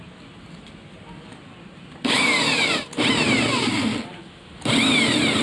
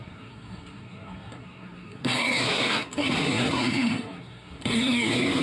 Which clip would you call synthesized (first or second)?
second